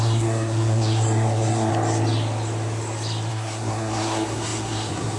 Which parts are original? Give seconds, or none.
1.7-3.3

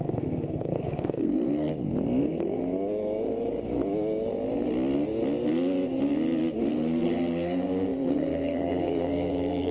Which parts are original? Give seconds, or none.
1.7-2.2; 2.6-6.7

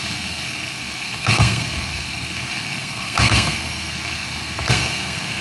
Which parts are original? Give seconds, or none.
none